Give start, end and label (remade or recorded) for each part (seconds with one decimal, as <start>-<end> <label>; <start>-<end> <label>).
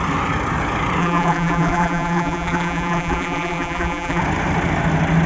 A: 0.0-1.0 recorded; 1.0-4.2 remade; 4.2-5.3 recorded